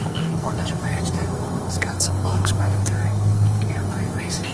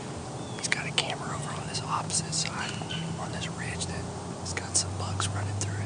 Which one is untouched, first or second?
second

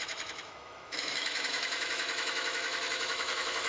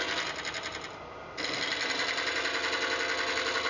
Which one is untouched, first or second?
second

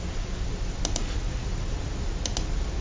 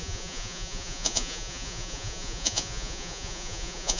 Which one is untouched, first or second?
first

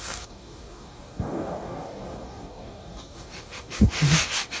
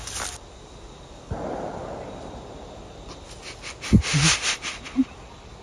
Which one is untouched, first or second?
second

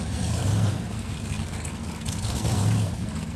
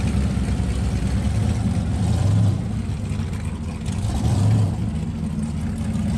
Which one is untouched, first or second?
second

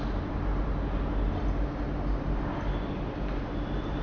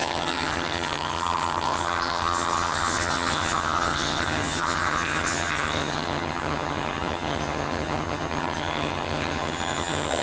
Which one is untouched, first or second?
first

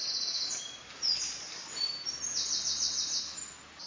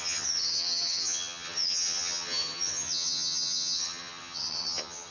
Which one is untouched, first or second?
first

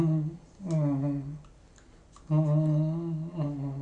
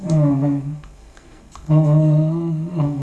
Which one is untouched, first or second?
first